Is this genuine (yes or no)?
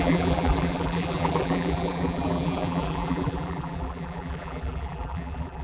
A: no